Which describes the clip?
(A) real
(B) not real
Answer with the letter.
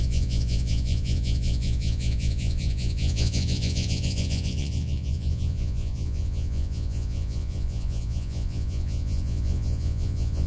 B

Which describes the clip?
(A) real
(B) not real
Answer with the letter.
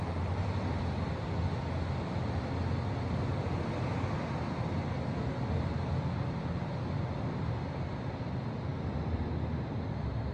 A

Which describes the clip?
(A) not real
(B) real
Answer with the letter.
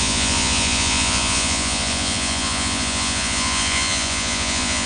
A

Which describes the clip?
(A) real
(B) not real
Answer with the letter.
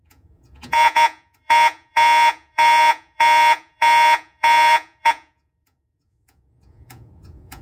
B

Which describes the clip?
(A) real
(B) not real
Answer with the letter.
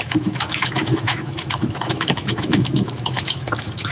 B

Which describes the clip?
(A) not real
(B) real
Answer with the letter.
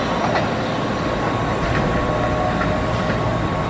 B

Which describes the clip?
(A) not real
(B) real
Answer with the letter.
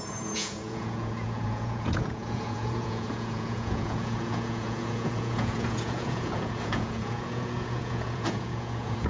A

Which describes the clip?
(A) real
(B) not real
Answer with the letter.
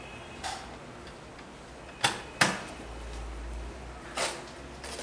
A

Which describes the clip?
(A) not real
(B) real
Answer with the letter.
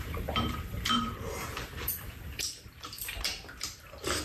A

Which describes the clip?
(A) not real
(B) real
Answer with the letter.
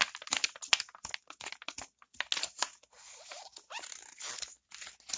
B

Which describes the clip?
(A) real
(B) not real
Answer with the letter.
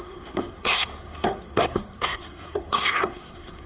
B